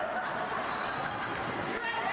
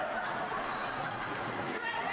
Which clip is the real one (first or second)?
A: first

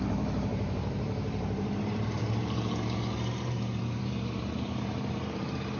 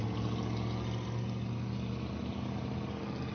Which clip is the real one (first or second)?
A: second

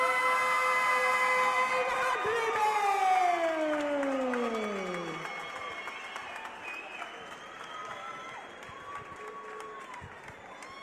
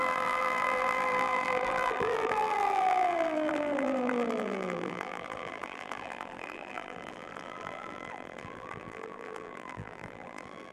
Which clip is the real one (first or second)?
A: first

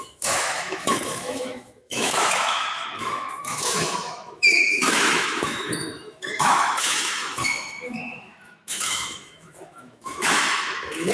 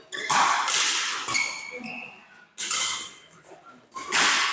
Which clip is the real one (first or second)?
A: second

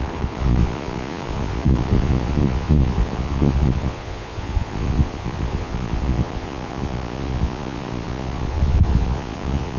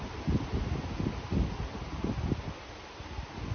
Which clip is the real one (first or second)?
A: second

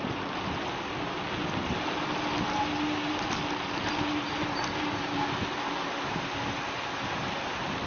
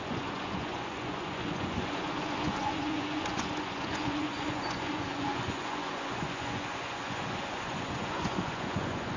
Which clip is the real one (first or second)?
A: first